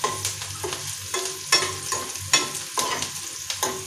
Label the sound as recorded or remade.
recorded